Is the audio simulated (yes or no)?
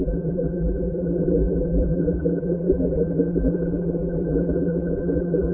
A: yes